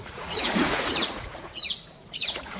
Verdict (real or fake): fake